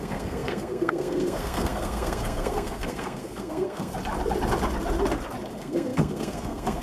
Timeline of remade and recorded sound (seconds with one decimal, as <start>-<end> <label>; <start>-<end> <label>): 0.0-3.9 remade; 3.9-5.5 recorded; 5.5-6.8 remade